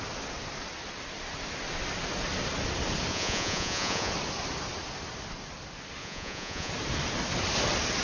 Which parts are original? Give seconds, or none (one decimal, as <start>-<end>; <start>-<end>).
0.0-3.1; 4.1-6.0; 6.7-8.0